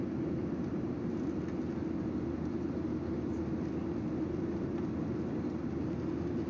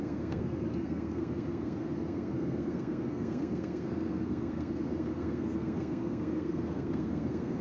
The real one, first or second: first